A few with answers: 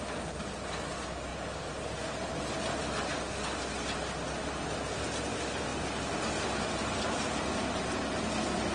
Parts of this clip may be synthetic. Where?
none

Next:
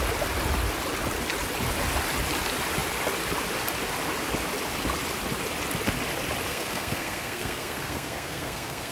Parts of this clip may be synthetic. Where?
6.5-8.9 (codec, SNAC)

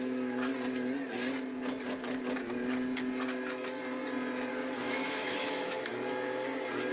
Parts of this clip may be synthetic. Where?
0.0-0.5 (autoencoder, DAC-VAE); 4.5-5.9

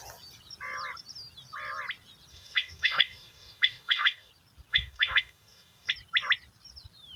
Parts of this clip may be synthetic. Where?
2.3-4.3 (codec, DAC); 4.7-5.9

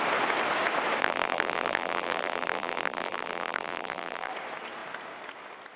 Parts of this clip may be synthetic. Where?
1.0-4.3 (vocoder, BigVGAN v2)